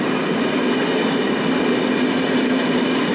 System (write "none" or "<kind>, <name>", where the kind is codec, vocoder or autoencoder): none